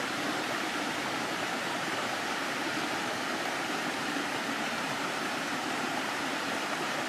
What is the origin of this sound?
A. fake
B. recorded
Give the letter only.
A